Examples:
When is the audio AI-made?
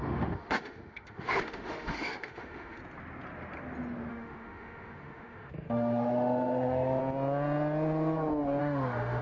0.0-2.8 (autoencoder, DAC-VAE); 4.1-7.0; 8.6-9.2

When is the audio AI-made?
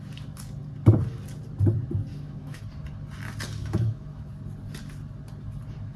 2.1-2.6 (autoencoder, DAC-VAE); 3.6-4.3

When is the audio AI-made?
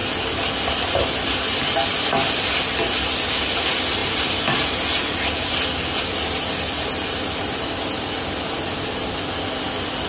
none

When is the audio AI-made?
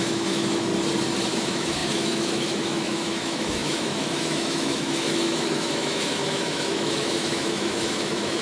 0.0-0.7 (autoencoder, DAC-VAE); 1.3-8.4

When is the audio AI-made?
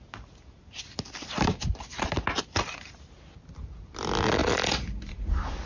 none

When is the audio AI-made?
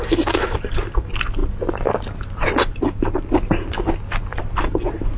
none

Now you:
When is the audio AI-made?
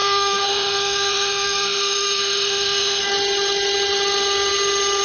0.0-3.0 (autoencoder, DAC-VAE)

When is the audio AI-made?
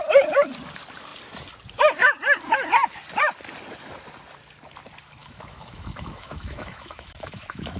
5.2-7.8 (autoencoder, DAC-VAE)